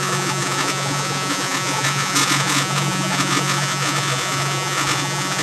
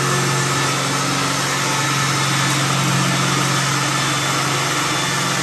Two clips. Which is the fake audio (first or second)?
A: first